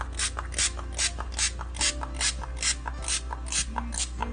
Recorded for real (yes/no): yes